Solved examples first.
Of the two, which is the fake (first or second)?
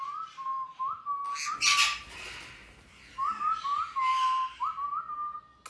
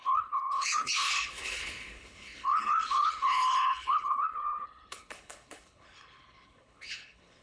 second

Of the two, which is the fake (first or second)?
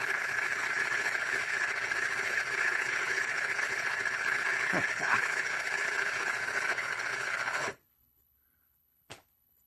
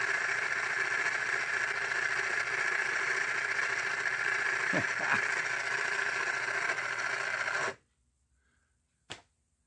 first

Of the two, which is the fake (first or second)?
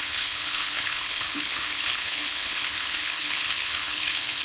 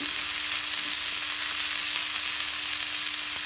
first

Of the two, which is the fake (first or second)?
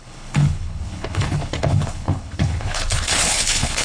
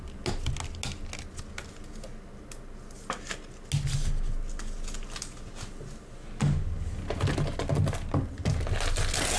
first